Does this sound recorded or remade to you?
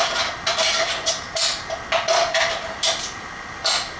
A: recorded